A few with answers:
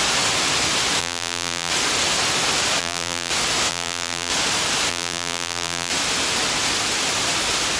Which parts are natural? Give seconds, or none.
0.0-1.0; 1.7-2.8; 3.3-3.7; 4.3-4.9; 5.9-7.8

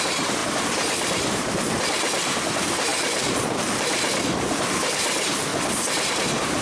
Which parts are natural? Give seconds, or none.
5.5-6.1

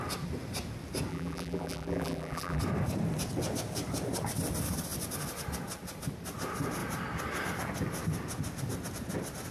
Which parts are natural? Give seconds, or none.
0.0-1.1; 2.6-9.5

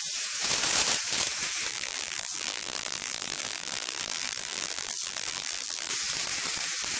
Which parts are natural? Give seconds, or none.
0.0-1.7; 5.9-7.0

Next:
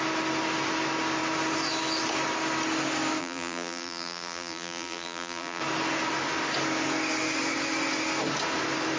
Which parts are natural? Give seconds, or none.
0.0-3.2; 5.6-9.0

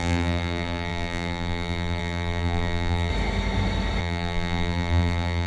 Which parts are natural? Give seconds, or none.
3.1-4.0

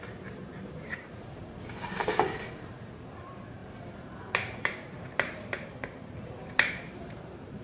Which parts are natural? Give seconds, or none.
3.6-4.2